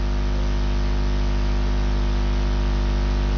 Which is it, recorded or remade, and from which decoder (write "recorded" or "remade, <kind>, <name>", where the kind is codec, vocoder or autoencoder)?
recorded